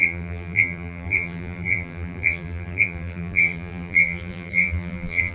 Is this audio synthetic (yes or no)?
yes